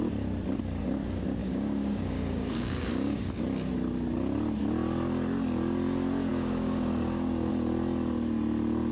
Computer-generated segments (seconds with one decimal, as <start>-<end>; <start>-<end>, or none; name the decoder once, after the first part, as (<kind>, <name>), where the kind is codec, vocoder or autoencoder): 1.4-3.3 (codec, DAC); 6.3-7.5